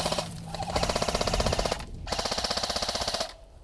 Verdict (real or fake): fake